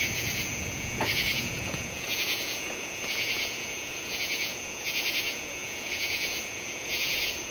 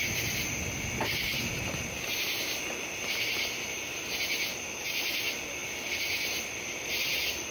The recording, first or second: second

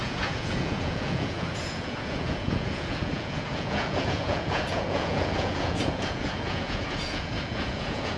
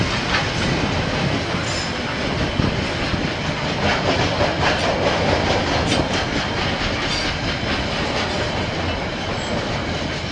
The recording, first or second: second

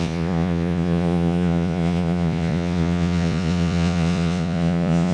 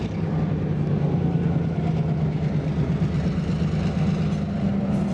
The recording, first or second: second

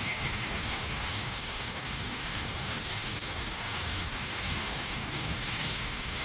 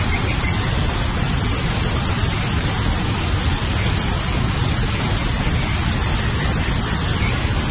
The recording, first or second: second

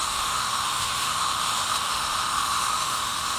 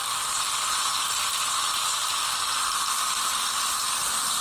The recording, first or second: second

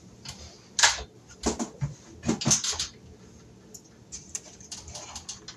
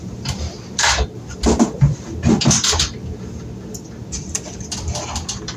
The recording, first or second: first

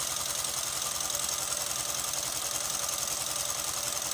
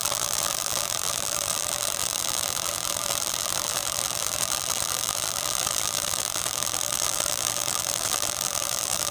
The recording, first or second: first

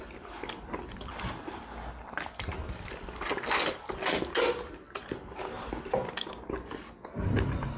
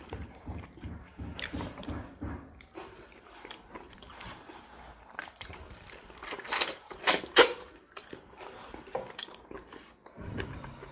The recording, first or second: first